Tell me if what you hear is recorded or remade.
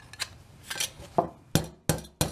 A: recorded